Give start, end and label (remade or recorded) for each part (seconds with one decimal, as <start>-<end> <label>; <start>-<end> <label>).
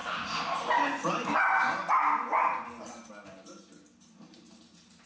0.0-5.1 recorded